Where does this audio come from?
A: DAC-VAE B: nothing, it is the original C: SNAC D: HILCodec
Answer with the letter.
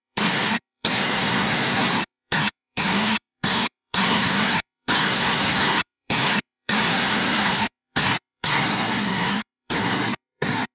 C